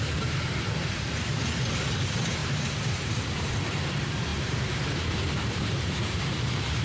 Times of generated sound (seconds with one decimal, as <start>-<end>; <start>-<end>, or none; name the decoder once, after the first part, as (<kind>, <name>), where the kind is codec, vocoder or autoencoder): 0.0-6.8 (vocoder, BigVGAN v2)